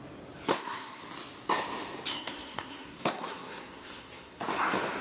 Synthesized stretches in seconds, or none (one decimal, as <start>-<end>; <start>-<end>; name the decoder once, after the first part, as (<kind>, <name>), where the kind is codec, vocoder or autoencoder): 0.5-1.0 (codec, SNAC); 2.1-4.4